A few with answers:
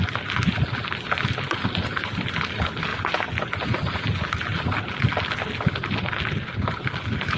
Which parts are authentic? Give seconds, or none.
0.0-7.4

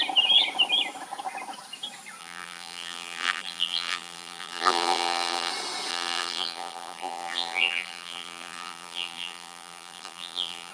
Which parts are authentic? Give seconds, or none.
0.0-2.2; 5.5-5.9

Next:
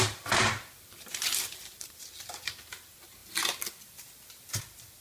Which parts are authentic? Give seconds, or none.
3.2-4.6